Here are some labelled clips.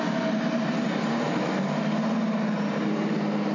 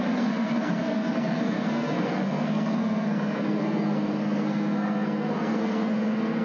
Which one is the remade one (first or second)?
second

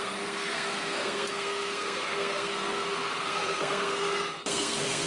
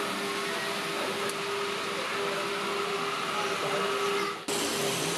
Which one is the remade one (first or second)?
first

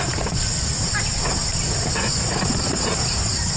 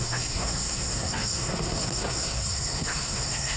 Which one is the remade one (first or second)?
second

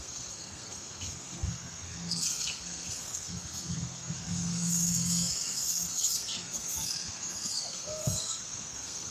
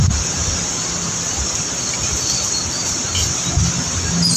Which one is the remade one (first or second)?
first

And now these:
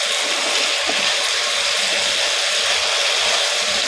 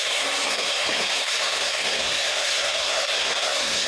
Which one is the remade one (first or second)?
second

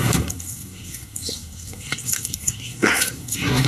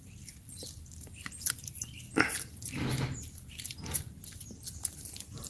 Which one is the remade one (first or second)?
first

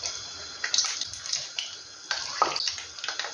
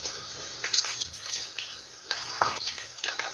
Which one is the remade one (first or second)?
second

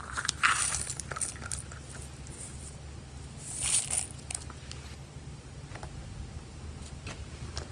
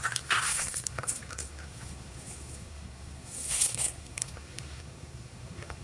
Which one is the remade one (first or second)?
second